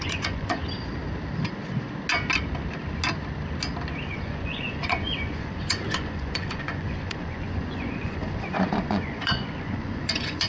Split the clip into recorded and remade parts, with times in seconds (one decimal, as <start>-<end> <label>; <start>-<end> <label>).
0.0-0.6 remade; 0.6-4.1 recorded; 4.1-10.5 remade